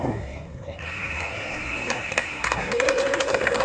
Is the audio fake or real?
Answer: fake